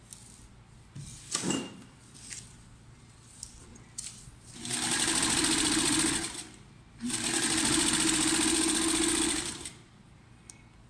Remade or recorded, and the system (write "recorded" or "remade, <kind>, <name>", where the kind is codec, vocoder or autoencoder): remade, vocoder, BigVGAN v2